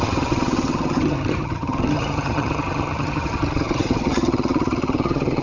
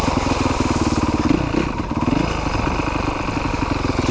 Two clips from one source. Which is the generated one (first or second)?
first